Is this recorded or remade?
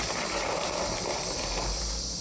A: recorded